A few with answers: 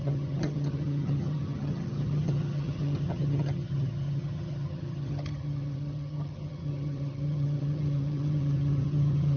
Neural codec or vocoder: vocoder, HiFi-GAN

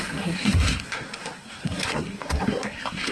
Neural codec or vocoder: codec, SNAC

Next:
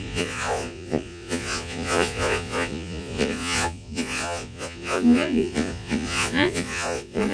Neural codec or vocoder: vocoder, Vocos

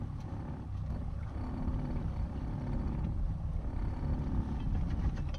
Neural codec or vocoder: none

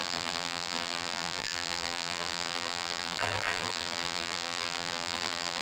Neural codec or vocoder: vocoder, BigVGAN v2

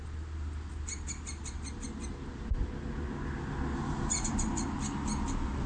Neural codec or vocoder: none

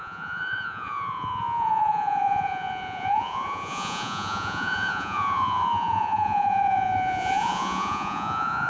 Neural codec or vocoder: vocoder, Vocos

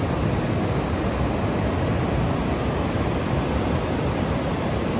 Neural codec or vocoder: none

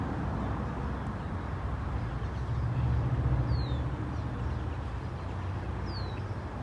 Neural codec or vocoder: none